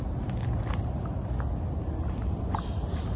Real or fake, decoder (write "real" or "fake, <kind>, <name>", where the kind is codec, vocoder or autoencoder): real